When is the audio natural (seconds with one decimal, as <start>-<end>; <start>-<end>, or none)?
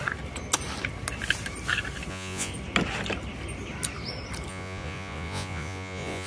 0.0-2.1; 2.5-4.5